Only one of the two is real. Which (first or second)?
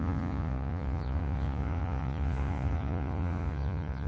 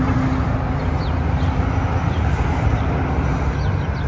second